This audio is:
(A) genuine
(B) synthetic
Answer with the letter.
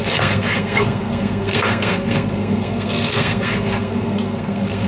B